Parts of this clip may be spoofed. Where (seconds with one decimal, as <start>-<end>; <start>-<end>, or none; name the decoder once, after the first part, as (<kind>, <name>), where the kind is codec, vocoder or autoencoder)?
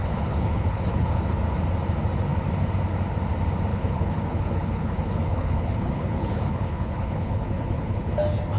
0.0-1.4 (codec, HILCodec); 3.7-8.1